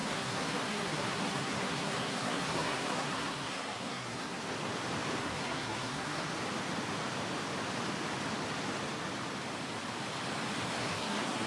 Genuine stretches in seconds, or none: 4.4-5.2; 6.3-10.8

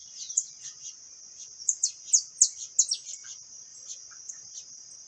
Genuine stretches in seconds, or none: 1.9-3.7; 4.3-5.1

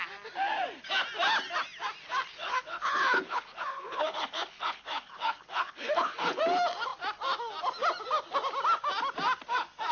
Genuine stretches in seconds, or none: 0.0-2.3; 6.4-9.9